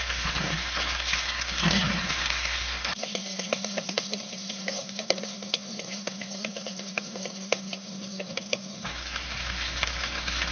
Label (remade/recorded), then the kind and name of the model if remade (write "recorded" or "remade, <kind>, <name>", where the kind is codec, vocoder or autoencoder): remade, codec, SNAC